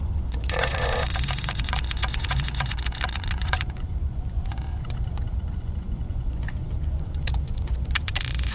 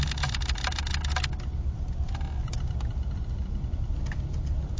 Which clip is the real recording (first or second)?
second